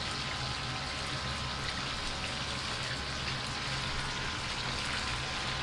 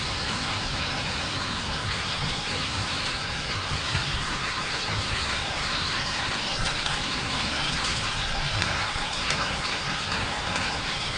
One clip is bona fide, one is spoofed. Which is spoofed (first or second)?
second